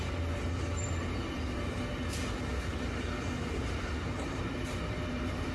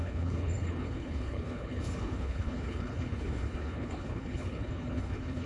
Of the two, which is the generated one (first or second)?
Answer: second